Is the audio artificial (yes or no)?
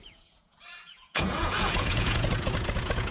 yes